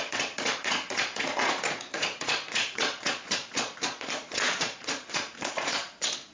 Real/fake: fake